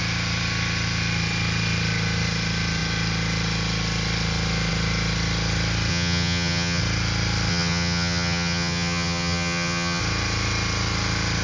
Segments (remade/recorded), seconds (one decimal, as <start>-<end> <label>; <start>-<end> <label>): 0.0-5.9 recorded; 5.9-6.8 remade; 6.8-7.5 recorded; 7.5-10.0 remade; 10.0-11.4 recorded